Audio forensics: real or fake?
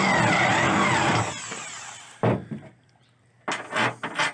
real